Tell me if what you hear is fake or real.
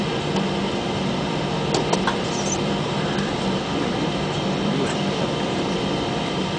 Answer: fake